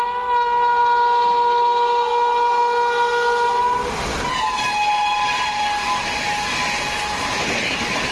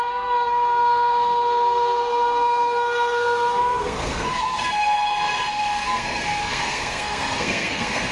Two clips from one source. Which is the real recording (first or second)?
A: first